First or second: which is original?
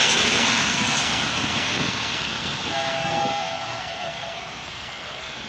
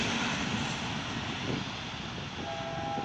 second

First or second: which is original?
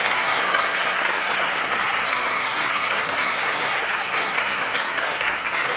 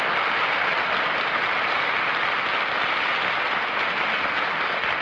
second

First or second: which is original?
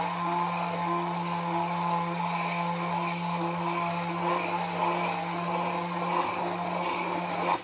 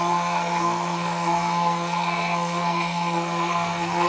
first